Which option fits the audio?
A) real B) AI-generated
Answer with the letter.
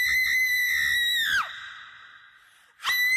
A